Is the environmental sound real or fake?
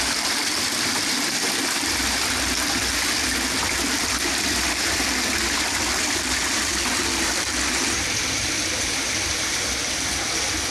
fake